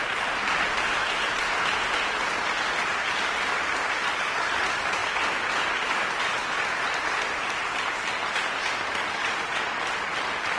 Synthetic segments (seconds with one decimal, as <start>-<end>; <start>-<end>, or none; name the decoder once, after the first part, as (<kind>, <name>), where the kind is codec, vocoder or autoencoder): 9.2-9.8 (vocoder, Vocos)